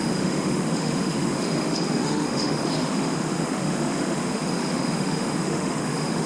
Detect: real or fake fake